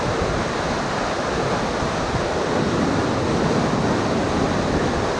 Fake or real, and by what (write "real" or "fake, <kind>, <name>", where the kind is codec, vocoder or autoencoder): real